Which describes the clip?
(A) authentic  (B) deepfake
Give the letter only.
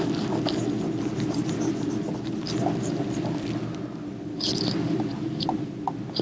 A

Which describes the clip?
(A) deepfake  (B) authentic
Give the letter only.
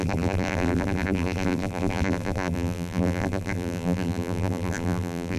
A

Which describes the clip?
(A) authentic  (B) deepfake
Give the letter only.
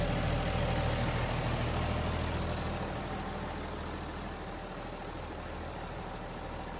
A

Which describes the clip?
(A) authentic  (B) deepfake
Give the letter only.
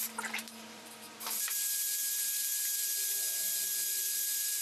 B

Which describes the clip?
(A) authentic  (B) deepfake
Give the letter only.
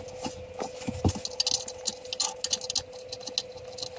A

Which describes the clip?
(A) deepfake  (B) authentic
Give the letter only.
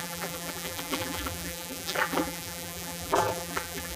A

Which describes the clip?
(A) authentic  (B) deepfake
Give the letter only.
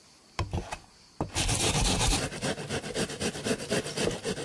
A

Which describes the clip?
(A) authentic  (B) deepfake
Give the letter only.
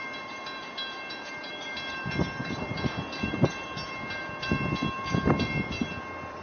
B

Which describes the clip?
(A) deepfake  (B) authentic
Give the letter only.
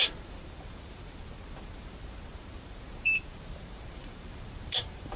A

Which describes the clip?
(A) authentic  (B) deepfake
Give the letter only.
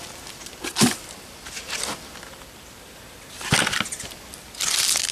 B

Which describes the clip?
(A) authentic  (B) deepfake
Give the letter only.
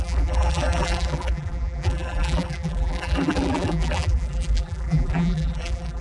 B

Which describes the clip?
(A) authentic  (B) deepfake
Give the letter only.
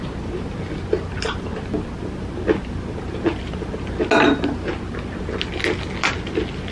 A